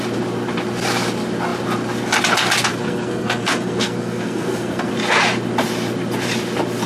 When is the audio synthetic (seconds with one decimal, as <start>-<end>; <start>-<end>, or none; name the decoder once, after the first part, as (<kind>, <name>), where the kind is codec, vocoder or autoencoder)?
2.7-4.9 (codec, SNAC)